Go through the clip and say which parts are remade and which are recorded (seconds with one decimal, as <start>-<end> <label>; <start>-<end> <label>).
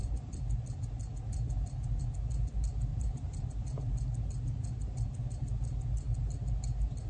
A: 0.0-2.9 recorded; 2.9-3.8 remade; 3.8-7.1 recorded